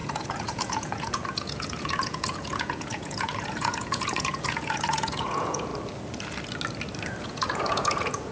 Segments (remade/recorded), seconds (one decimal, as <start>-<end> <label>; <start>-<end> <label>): 0.0-5.7 remade; 5.7-7.2 recorded; 7.2-8.3 remade